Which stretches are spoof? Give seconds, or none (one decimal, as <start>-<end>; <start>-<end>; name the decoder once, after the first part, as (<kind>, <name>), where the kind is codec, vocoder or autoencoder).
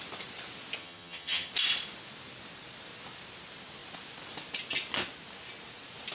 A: 0.8-1.5 (vocoder, HiFi-GAN)